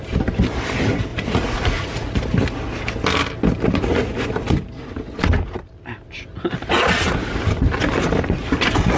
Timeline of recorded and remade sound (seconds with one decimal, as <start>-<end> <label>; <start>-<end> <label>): 0.0-1.1 recorded; 1.1-2.2 remade; 2.2-9.0 recorded